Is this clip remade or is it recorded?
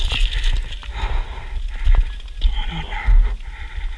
recorded